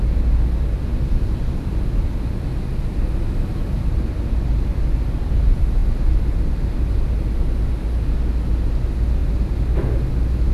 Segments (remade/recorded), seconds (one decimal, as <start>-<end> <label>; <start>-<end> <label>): 0.0-10.5 recorded